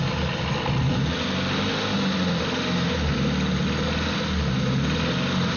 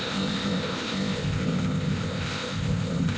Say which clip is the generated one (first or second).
second